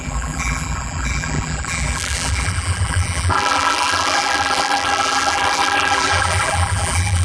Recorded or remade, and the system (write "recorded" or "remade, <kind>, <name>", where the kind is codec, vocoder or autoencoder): remade, vocoder, BigVGAN v2